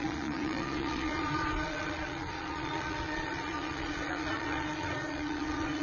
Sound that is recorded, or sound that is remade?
remade